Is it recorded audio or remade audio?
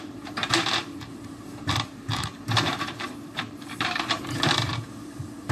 remade